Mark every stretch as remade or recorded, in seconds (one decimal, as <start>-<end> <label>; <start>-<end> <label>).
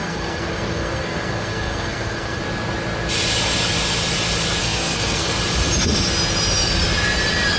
0.0-2.4 remade; 2.4-4.6 recorded; 4.6-5.3 remade; 5.3-7.6 recorded